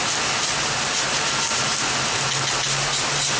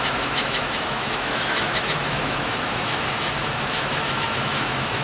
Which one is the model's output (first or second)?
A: second